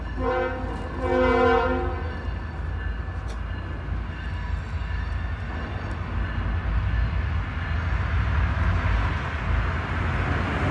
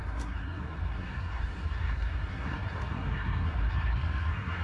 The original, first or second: first